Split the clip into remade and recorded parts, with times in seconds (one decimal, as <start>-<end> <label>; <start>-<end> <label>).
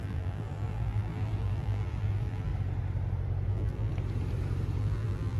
0.0-2.5 remade; 2.5-3.5 recorded; 3.5-3.9 remade; 3.9-4.8 recorded; 4.8-5.4 remade